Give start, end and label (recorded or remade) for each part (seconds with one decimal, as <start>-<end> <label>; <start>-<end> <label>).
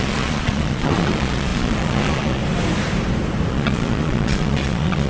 0.0-2.4 remade; 2.4-3.5 recorded; 3.5-5.1 remade